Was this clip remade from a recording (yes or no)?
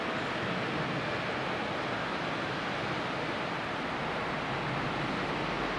no